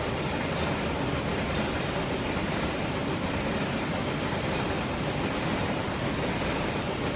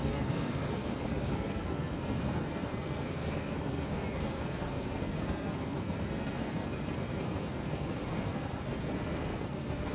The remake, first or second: second